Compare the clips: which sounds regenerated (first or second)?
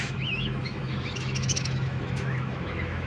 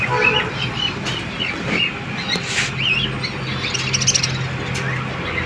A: first